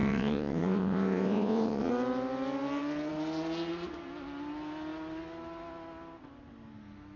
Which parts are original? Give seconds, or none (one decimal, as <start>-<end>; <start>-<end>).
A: 1.9-7.2